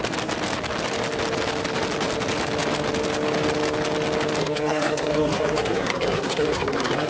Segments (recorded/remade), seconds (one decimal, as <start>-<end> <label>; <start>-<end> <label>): 0.0-4.4 recorded; 4.4-7.1 remade